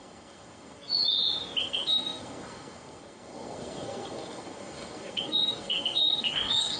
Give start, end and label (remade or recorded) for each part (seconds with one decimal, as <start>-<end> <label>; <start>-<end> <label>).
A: 0.0-1.0 remade; 1.0-1.6 recorded; 1.6-6.8 remade